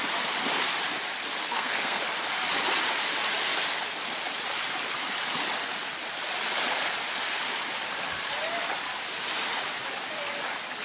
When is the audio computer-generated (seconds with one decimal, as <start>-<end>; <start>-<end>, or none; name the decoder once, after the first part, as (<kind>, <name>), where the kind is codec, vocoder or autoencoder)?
1.4-2.0 (codec, SNAC)